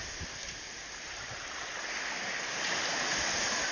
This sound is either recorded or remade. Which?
recorded